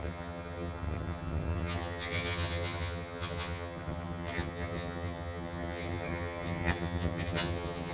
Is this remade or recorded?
remade